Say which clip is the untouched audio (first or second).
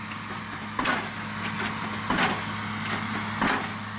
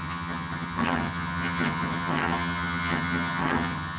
first